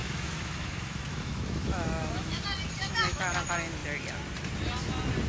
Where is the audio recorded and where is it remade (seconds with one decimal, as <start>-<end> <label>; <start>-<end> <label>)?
0.0-2.4 remade; 2.4-2.8 recorded; 2.8-3.3 remade; 3.3-5.3 recorded